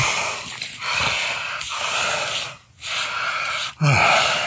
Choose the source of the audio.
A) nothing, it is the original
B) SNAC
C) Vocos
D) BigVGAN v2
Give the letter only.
A